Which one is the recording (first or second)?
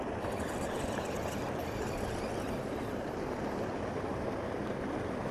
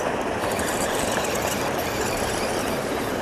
first